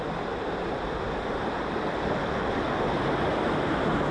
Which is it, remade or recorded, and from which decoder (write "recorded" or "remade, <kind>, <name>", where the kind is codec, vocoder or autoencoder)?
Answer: recorded